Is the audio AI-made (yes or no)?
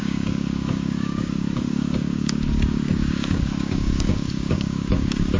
yes